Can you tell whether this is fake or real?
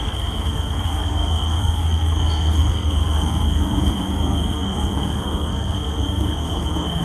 fake